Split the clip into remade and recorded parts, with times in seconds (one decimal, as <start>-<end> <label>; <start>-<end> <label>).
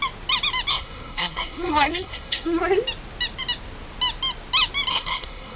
0.0-0.7 recorded; 0.7-2.6 remade; 2.6-4.9 recorded; 4.9-5.6 remade